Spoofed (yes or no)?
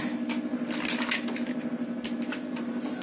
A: no